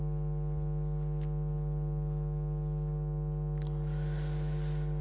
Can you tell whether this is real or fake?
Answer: real